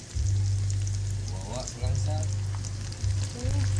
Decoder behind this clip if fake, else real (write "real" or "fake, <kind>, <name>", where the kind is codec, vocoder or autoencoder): real